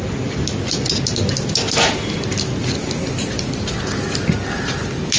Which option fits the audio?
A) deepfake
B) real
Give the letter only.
B